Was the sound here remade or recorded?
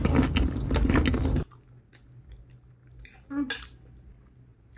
recorded